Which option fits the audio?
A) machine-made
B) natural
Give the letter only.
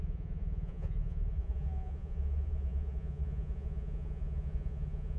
A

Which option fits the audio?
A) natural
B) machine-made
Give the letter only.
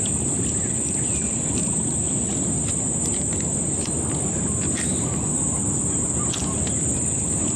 A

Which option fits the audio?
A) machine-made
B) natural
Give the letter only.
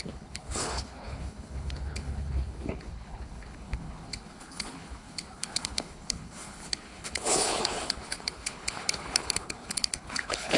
A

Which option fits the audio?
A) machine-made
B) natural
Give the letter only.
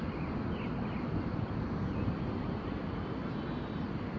B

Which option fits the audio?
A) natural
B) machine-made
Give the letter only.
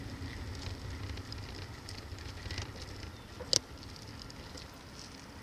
A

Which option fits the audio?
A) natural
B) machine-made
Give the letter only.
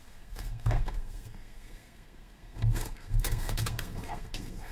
B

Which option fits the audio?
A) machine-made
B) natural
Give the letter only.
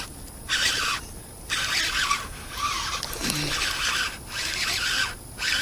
B